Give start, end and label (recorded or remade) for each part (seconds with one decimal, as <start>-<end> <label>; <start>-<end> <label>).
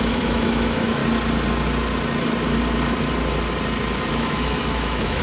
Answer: 0.0-1.0 remade; 1.0-4.1 recorded; 4.1-5.2 remade